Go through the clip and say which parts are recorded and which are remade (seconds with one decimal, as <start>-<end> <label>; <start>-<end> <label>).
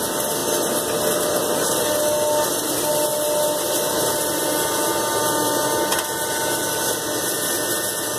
0.0-8.2 recorded